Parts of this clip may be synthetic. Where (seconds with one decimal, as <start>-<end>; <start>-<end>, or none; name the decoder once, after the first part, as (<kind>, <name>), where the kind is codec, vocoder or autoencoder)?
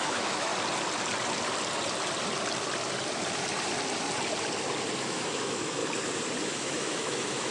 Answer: 0.0-0.5 (autoencoder, DAC-VAE); 5.0-5.8; 6.4-7.5